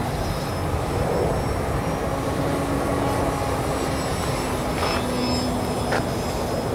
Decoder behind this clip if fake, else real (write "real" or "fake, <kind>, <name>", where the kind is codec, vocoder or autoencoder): real